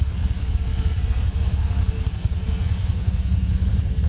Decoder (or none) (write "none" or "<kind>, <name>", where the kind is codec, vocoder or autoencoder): codec, SNAC